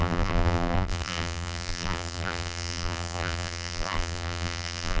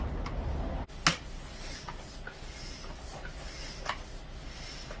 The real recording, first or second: second